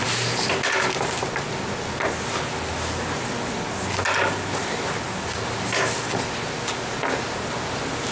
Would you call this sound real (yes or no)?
yes